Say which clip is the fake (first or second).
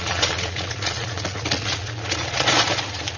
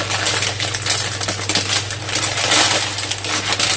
first